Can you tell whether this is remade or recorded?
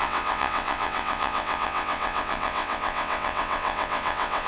remade